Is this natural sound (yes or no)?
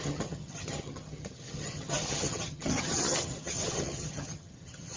no